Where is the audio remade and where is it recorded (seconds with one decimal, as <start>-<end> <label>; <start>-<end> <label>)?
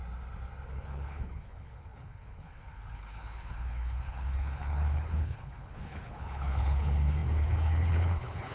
0.0-0.7 recorded; 0.7-8.5 remade